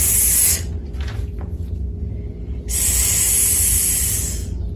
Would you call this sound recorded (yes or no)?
yes